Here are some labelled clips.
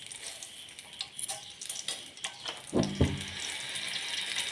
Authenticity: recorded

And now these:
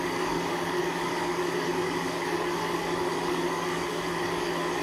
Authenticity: remade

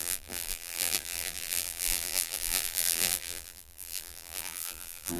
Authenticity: remade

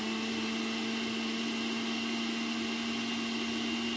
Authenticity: recorded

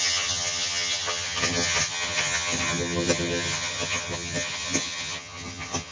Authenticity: remade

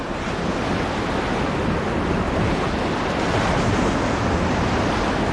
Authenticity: recorded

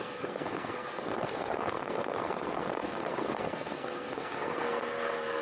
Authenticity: remade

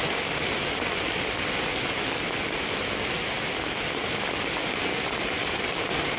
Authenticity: recorded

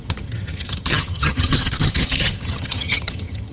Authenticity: remade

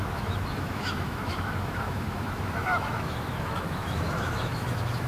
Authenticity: remade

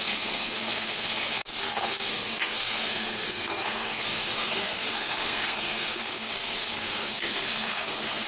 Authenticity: remade